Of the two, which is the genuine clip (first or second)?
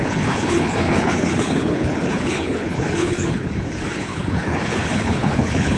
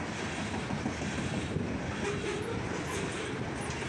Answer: second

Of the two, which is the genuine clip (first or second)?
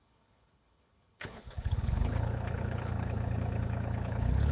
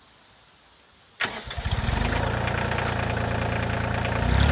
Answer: second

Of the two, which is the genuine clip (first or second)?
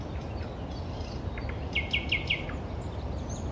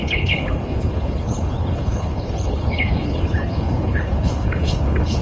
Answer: first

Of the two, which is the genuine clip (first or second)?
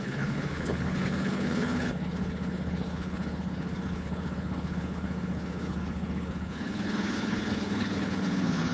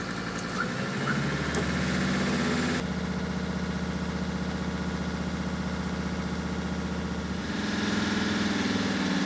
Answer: second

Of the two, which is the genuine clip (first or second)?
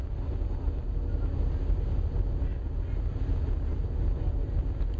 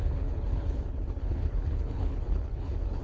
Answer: first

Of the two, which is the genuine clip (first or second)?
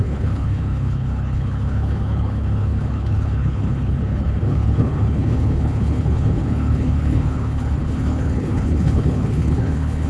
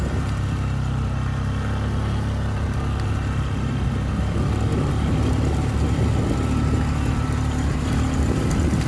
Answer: second